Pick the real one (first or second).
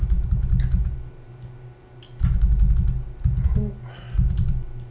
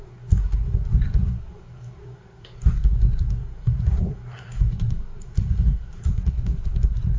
first